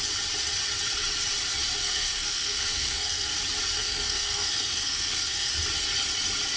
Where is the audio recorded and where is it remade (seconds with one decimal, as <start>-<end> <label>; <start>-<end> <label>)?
0.0-1.8 recorded; 1.8-3.3 remade; 3.3-3.8 recorded; 3.8-5.5 remade; 5.5-6.6 recorded